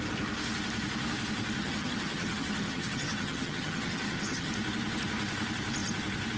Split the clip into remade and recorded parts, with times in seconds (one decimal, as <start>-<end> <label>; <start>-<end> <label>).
0.0-1.6 recorded; 1.6-4.5 remade; 4.5-6.4 recorded